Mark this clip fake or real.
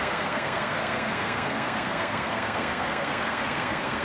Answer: fake